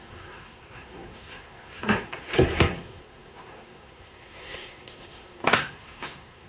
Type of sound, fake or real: fake